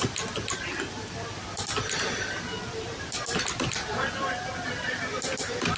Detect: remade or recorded recorded